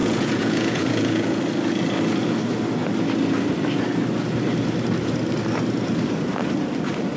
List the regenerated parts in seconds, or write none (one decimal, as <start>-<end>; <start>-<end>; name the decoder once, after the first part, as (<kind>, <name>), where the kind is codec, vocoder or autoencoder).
0.0-1.4 (vocoder, Vocos)